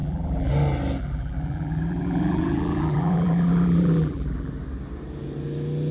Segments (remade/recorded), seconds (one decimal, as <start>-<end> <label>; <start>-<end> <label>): 0.0-0.5 remade; 0.5-1.0 recorded; 1.0-4.5 remade; 4.5-5.9 recorded